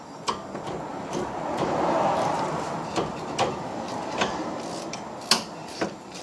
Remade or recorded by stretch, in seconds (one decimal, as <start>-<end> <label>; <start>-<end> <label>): 0.0-0.9 recorded; 0.9-4.6 remade; 4.6-5.6 recorded; 5.6-6.2 remade